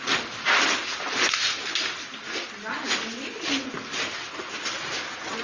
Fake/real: real